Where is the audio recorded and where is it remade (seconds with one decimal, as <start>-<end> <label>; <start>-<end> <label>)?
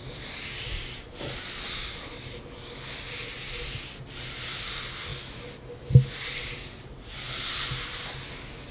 0.0-8.7 recorded